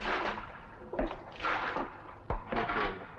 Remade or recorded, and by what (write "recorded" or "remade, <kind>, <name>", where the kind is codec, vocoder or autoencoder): recorded